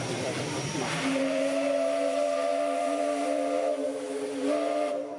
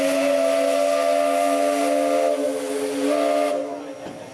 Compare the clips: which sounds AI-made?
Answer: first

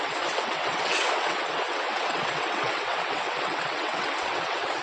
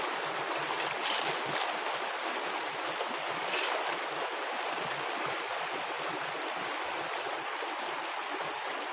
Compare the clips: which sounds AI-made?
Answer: first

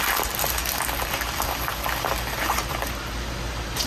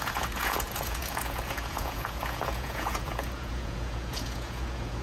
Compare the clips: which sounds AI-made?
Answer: second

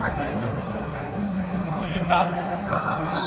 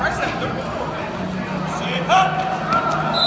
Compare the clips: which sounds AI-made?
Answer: first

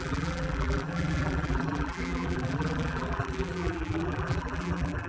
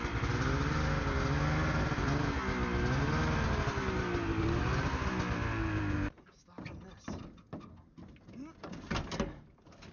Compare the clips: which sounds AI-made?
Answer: first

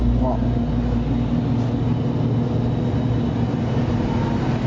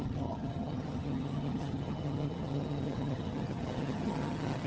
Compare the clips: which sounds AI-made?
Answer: second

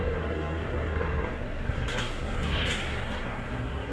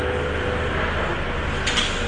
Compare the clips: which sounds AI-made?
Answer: first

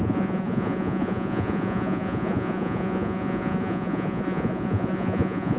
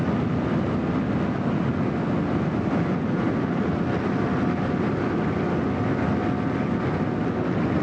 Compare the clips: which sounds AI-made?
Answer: first